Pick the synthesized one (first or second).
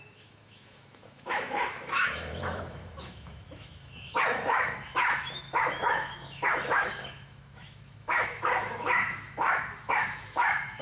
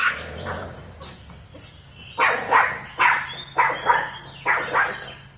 first